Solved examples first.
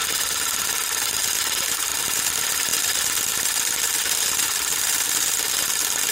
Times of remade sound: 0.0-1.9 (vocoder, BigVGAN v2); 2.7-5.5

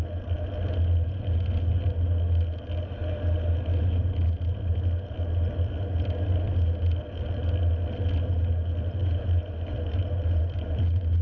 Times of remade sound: 9.0-11.2 (vocoder, BigVGAN v2)

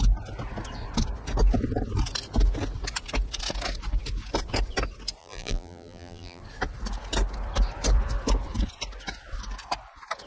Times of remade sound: 5.2-6.4 (vocoder, BigVGAN v2)

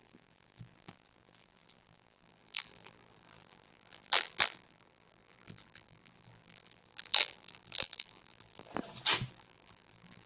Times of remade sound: 0.0-8.7 (vocoder, BigVGAN v2); 9.3-10.3